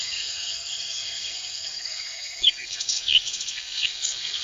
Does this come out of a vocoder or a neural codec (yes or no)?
yes